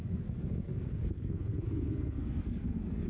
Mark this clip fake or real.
fake